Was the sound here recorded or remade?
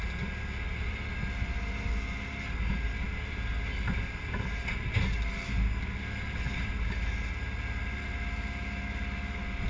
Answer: recorded